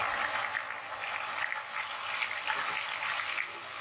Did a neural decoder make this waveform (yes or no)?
no